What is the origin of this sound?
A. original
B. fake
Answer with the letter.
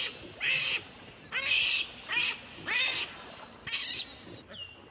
A